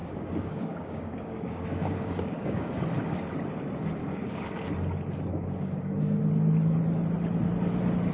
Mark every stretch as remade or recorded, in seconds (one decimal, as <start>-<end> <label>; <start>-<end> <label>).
0.0-2.8 remade; 2.8-4.0 recorded; 4.0-4.7 remade; 4.7-5.3 recorded; 5.3-6.2 remade; 6.2-8.1 recorded